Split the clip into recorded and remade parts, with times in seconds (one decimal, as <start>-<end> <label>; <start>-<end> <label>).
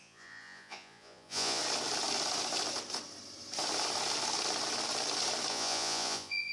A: 0.0-1.6 remade; 1.6-5.5 recorded; 5.5-6.5 remade